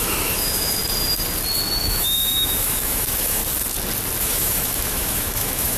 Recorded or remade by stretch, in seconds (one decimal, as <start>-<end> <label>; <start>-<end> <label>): 0.0-0.8 remade; 0.8-1.8 recorded; 1.8-3.4 remade; 3.4-4.2 recorded; 4.2-5.8 remade